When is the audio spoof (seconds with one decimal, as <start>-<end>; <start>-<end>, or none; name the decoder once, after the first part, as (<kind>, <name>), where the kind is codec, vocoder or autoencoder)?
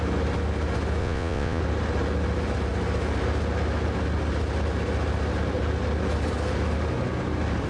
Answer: 1.0-1.6 (vocoder, Vocos)